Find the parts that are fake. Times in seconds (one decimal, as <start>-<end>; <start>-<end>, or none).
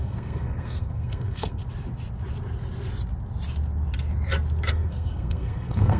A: 0.0-1.6; 4.7-6.0